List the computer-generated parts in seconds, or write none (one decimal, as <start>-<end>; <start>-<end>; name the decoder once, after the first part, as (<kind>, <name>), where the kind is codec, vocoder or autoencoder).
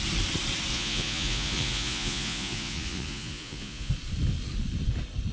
0.7-3.9 (vocoder, Vocos)